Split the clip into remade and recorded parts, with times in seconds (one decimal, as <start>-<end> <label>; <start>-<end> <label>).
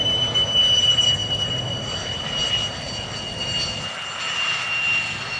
0.0-5.4 recorded